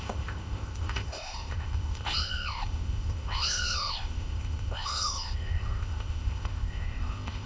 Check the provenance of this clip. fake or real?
fake